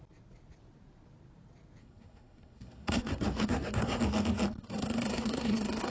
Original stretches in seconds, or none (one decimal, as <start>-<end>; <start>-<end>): 0.0-1.8; 4.0-4.5